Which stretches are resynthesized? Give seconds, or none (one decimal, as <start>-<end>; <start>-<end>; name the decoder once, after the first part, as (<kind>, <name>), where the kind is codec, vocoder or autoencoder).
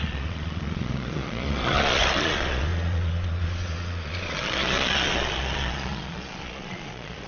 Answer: 0.0-7.3 (vocoder, Vocos)